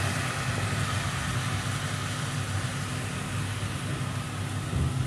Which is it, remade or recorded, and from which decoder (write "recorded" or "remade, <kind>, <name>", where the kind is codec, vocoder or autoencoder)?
recorded